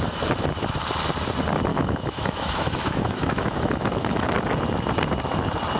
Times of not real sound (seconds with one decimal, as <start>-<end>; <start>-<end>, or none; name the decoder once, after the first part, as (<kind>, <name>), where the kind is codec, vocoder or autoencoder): 1.7-4.3 (autoencoder, DAC-VAE)